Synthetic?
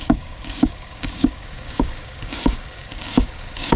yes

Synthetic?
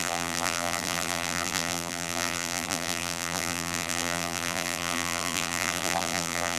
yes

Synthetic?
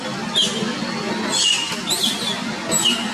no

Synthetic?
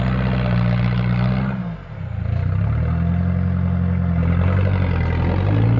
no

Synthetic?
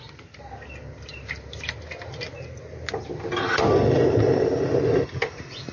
no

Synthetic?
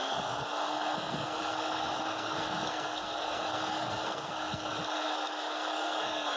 yes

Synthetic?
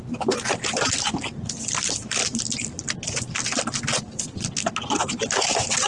yes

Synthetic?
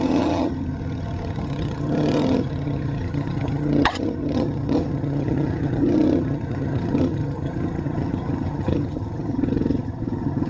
yes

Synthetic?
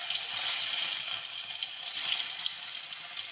no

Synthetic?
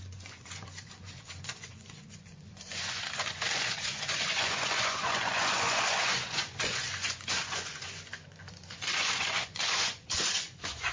yes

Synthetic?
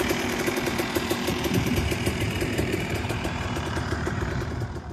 yes